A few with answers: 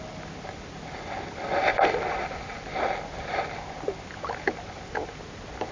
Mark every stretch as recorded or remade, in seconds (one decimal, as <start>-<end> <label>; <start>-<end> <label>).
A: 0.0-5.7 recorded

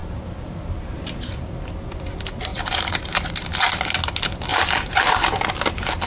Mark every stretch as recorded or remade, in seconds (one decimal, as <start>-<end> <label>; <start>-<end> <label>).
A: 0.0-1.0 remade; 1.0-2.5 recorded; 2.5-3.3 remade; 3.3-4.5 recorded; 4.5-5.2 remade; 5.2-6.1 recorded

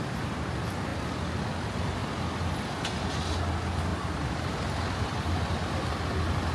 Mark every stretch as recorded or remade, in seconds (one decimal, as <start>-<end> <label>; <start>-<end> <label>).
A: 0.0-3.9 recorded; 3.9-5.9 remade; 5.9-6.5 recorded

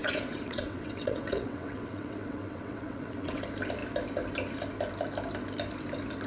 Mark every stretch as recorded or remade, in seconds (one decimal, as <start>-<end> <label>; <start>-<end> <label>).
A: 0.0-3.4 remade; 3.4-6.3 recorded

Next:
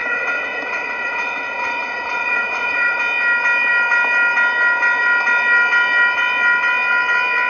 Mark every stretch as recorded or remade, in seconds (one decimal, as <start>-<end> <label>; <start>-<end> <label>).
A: 0.0-3.0 remade; 3.0-7.5 recorded